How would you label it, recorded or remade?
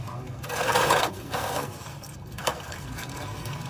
remade